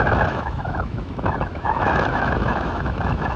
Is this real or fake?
fake